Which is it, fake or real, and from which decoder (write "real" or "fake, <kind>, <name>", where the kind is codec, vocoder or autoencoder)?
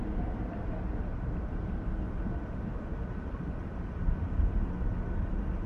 real